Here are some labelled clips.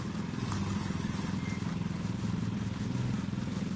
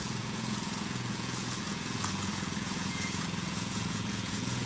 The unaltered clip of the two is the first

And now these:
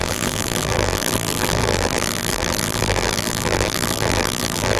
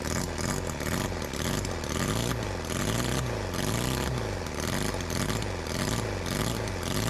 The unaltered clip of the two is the second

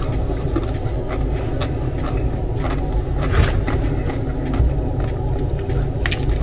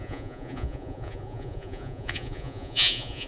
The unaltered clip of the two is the first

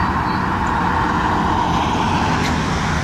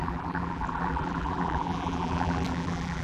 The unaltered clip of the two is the first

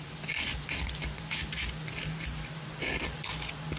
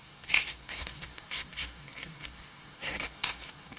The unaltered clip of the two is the first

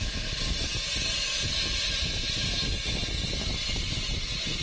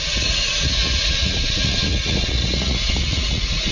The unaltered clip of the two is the first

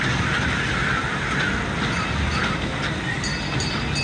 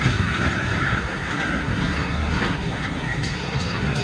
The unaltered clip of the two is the first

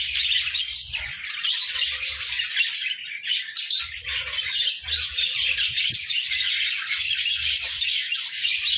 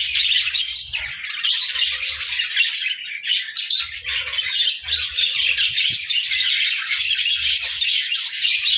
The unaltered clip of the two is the second